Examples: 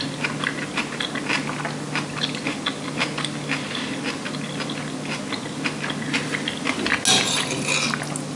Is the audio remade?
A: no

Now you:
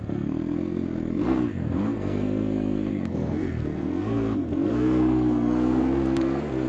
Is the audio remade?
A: yes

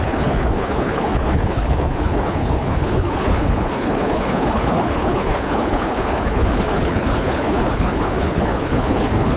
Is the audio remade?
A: yes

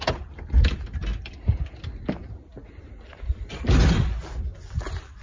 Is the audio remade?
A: no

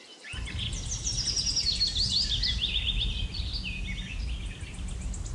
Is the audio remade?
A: no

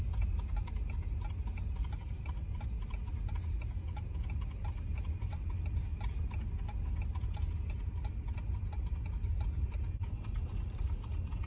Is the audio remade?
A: no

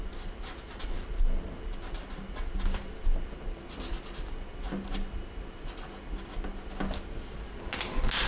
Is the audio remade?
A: no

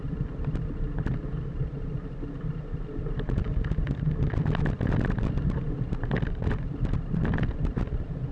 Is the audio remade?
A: no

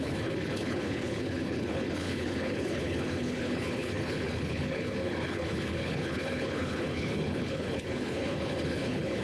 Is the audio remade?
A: yes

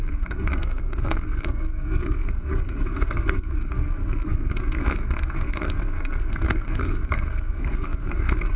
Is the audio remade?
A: yes